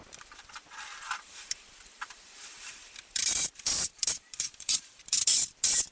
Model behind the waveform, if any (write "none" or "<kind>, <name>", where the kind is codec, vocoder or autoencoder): vocoder, BigVGAN v2